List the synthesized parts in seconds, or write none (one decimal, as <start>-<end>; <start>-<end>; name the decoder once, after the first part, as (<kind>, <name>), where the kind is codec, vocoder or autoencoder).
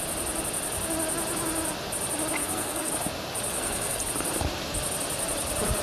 2.4-2.9 (codec, SNAC); 3.5-4.0